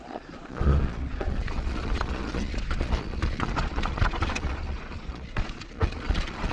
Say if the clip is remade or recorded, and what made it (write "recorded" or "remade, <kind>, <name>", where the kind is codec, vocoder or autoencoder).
remade, vocoder, Vocos